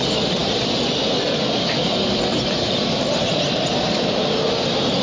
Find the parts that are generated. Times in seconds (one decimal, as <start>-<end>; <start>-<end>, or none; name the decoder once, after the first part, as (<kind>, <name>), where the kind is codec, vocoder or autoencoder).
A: none